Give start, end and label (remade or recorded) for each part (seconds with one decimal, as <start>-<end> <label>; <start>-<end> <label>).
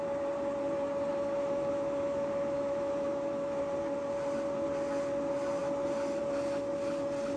0.0-1.1 recorded; 1.1-3.6 remade; 3.6-7.4 recorded